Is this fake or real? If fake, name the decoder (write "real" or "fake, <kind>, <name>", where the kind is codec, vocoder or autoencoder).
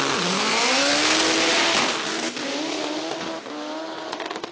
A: real